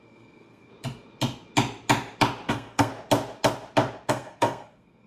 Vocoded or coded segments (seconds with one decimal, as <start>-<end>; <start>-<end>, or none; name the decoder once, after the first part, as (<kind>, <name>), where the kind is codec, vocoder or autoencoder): 0.0-0.7 (codec, SNAC); 2.5-2.9; 4.1-5.1